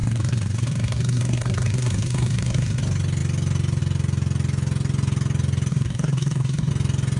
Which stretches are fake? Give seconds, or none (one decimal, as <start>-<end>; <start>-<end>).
0.0-2.8; 5.7-6.7